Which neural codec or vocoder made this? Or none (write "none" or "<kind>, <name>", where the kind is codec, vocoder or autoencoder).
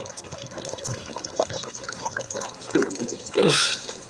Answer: codec, SNAC